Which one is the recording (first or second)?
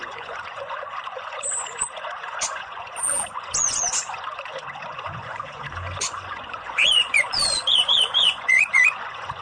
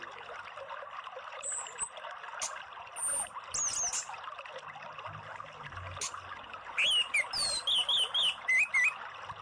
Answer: second